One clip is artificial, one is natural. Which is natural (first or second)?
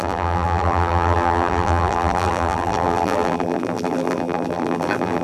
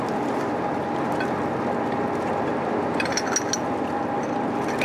second